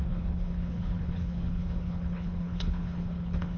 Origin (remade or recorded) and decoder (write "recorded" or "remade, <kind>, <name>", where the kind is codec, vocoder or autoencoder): remade, codec, HILCodec